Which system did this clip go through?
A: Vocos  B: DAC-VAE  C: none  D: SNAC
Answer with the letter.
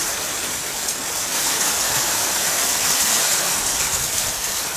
D